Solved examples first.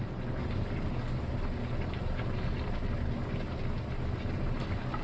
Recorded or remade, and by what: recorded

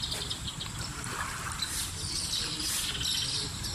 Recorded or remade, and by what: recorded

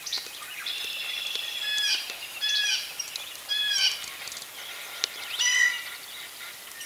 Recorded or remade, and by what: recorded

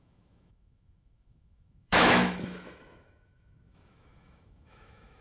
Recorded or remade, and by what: remade, autoencoder, DAC-VAE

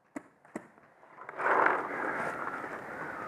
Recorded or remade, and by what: recorded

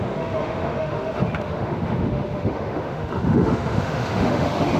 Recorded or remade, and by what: remade, autoencoder, DAC-VAE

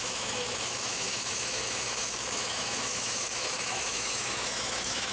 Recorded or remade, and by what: remade, autoencoder, DAC-VAE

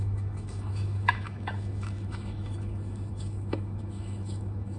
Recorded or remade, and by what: remade, autoencoder, DAC-VAE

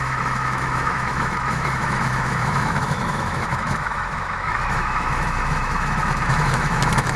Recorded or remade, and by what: remade, autoencoder, DAC-VAE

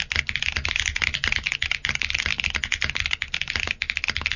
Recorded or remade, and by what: recorded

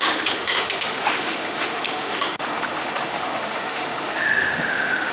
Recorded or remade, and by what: remade, autoencoder, DAC-VAE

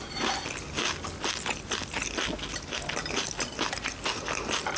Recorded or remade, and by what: recorded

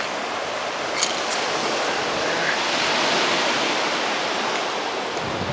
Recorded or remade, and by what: recorded